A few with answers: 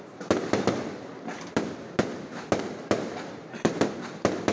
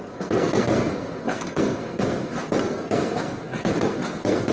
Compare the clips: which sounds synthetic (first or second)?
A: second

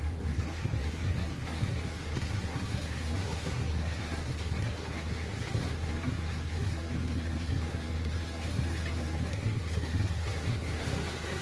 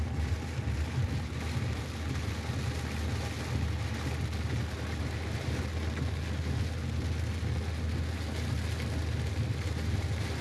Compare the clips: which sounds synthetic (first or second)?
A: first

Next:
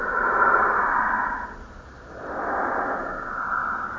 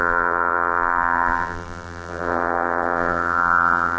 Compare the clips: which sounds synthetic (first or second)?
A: second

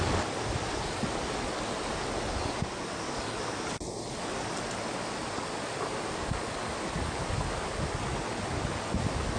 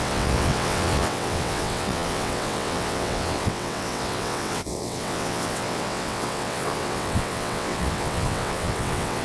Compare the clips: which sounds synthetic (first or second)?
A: second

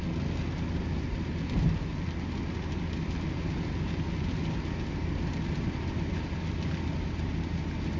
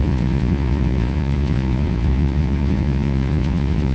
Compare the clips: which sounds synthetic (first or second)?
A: second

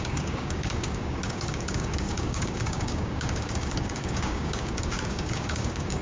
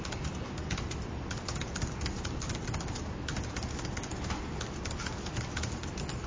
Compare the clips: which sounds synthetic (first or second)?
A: first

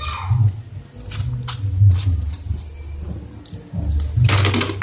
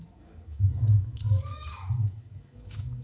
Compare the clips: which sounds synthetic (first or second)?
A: second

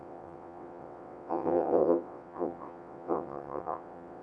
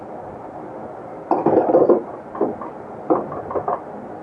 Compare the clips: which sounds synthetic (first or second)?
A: first